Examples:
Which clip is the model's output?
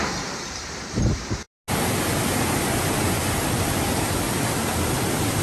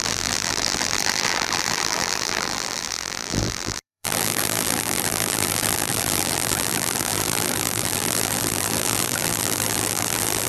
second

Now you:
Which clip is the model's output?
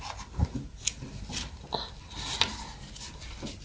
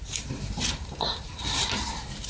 second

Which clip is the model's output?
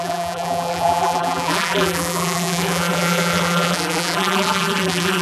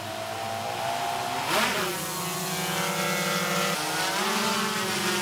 first